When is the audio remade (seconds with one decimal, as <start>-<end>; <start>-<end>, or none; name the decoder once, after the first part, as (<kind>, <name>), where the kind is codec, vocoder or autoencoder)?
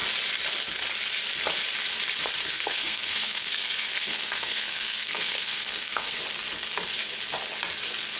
2.5-6.2 (codec, SNAC)